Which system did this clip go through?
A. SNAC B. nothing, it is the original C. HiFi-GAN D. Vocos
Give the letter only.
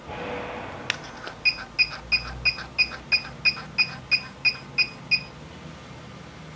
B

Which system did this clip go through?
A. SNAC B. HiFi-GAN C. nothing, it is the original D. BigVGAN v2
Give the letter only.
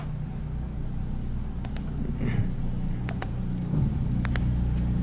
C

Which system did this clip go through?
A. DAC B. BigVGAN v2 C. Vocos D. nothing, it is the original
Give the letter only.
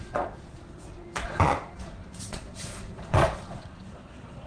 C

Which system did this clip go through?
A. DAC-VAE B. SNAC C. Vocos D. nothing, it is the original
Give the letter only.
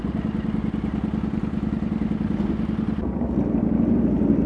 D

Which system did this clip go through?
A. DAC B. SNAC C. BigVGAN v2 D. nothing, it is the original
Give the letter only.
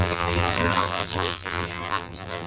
C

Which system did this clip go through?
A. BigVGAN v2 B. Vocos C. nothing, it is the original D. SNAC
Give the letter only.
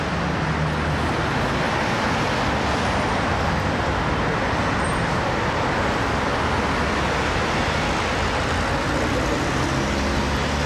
C